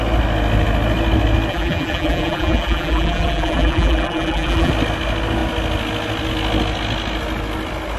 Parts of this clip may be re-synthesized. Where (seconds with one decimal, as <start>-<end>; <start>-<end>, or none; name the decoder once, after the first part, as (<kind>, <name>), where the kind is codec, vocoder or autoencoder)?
1.5-4.7 (vocoder, BigVGAN v2)